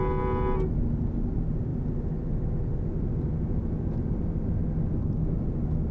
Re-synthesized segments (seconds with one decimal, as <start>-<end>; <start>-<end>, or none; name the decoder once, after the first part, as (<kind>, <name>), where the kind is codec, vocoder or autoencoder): none